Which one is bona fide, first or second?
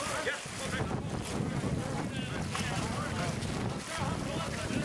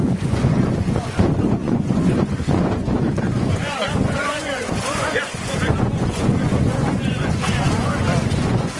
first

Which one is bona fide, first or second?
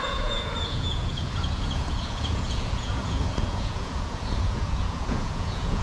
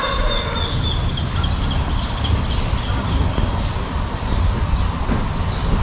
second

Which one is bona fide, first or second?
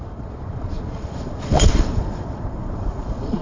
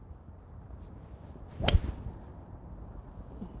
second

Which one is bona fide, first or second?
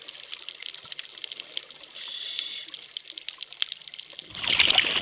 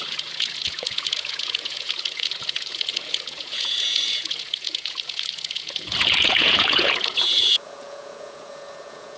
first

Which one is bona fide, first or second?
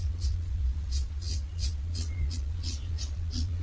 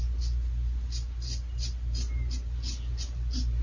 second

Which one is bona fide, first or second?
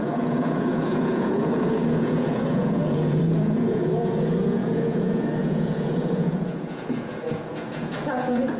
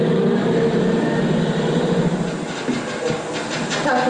second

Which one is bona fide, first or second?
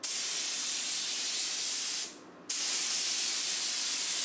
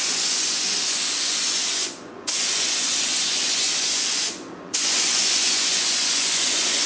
first